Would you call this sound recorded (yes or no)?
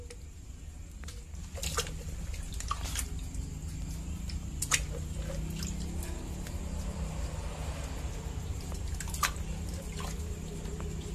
yes